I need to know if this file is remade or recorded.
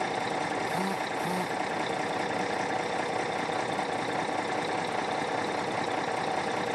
recorded